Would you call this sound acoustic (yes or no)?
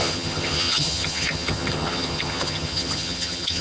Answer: no